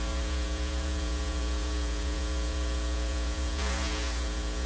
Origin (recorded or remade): remade